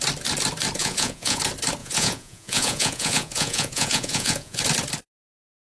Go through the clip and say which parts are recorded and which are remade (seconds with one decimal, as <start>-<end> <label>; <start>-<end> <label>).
0.0-0.8 recorded; 0.8-1.4 remade; 1.4-1.8 recorded; 1.8-4.6 remade; 4.6-5.8 recorded